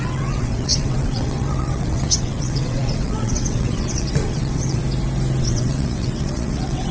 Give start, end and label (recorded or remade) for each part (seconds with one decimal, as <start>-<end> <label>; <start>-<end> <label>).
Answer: 0.0-4.8 remade; 4.8-5.4 recorded; 5.4-6.9 remade